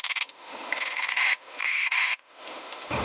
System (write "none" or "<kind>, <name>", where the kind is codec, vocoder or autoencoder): autoencoder, DAC-VAE